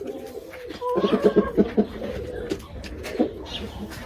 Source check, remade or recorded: recorded